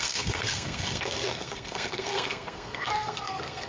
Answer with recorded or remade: remade